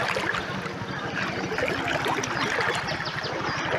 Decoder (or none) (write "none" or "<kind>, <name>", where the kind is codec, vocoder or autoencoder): none